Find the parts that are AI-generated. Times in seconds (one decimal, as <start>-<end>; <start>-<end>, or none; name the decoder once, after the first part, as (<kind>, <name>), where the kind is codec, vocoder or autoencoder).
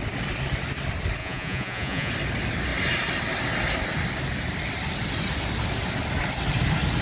1.2-2.1 (vocoder, Vocos)